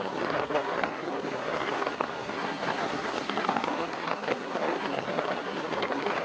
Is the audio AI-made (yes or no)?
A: yes